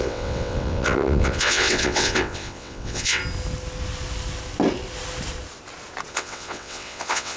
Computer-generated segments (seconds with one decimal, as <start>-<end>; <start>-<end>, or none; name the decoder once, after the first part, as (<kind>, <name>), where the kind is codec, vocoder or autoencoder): 0.0-3.2 (vocoder, WaveNeXt); 6.1-7.4